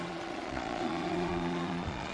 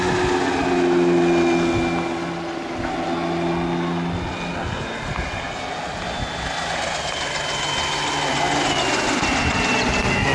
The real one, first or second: second